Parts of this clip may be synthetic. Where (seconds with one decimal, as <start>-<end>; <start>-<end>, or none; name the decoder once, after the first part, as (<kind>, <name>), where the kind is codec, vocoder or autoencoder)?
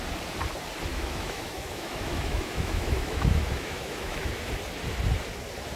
0.9-4.3 (autoencoder, DAC-VAE)